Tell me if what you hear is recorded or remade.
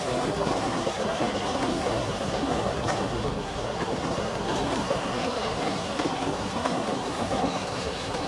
remade